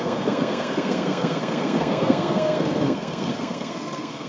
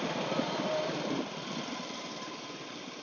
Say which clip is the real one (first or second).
second